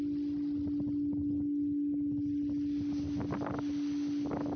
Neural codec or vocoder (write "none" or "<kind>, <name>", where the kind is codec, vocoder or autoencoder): none